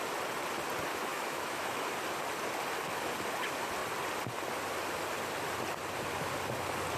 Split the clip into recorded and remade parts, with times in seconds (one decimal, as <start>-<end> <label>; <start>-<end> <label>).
0.0-0.9 recorded; 0.9-1.9 remade; 1.9-7.0 recorded